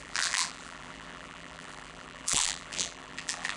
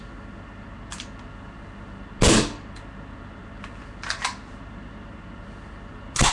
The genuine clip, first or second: second